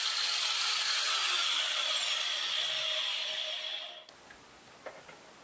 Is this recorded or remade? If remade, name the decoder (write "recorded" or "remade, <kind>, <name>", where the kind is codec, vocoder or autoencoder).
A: recorded